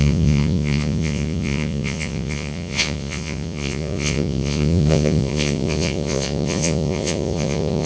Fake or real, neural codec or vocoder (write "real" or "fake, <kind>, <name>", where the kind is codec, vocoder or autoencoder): fake, vocoder, Vocos